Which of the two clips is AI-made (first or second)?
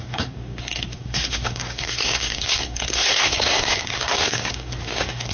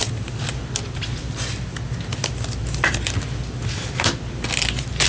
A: first